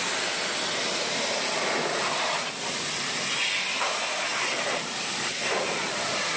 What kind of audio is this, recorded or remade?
recorded